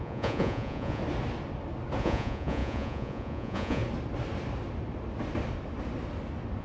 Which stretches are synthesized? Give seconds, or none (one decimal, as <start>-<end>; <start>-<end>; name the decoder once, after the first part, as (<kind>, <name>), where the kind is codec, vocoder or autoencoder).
0.0-1.0 (vocoder, Vocos); 2.0-3.8